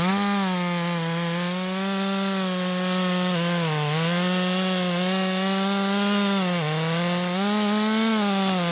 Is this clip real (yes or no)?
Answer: yes